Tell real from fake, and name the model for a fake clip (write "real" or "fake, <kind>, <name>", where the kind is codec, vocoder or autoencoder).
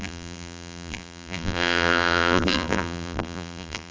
fake, vocoder, BigVGAN v2